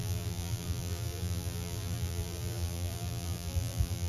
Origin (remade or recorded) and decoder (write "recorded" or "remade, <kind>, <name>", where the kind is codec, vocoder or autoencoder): remade, vocoder, BigVGAN v2